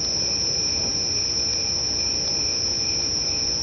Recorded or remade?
remade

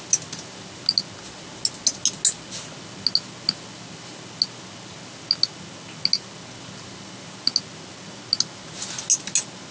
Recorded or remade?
recorded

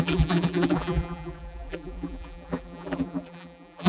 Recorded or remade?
remade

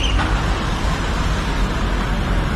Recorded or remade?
recorded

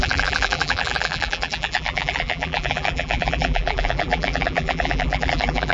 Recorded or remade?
remade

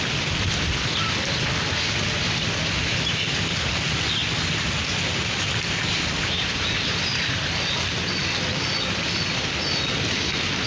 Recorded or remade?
recorded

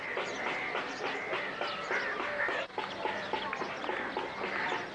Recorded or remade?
recorded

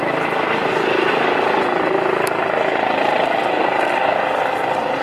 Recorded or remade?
recorded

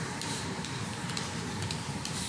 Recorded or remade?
remade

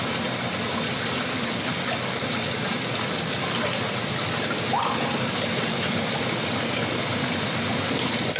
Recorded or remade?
recorded